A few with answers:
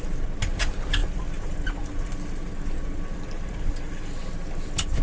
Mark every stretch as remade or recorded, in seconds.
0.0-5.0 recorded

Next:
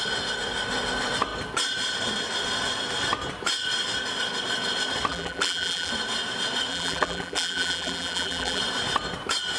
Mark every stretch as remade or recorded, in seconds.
0.0-5.1 recorded; 5.1-5.9 remade; 5.9-6.7 recorded; 6.7-8.6 remade; 8.6-9.6 recorded

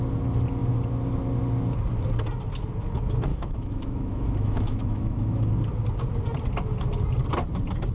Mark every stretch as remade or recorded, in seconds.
0.0-3.3 recorded; 3.3-5.5 remade; 5.5-7.9 recorded